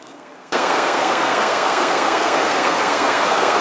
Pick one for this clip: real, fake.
fake